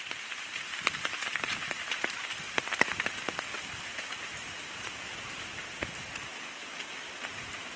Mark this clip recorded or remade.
remade